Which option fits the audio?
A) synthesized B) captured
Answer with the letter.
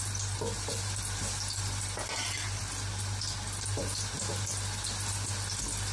A